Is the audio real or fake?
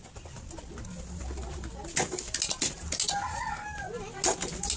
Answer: real